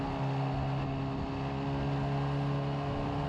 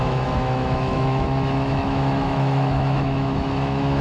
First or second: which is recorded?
first